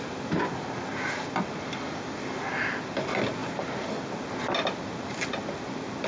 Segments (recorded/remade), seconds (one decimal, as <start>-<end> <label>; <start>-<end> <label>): 0.0-6.1 recorded